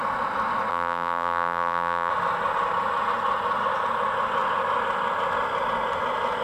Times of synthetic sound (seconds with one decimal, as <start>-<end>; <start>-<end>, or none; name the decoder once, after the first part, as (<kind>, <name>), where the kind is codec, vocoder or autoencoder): 0.7-2.1 (vocoder, BigVGAN v2)